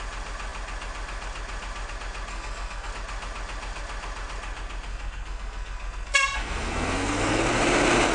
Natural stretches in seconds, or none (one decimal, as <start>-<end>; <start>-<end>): 0.0-2.3; 2.9-4.9; 7.4-8.1